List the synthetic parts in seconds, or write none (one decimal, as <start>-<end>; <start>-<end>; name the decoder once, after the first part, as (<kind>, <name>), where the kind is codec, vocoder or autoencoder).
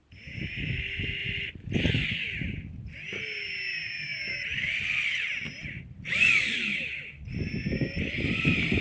1.2-1.8 (vocoder, BigVGAN v2); 5.3-7.5